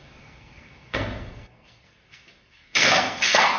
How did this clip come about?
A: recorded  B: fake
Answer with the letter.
B